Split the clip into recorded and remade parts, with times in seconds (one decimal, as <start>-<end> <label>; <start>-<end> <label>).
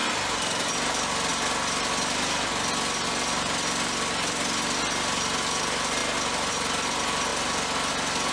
0.0-8.3 recorded